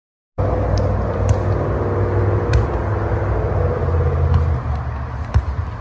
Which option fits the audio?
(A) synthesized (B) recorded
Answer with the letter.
B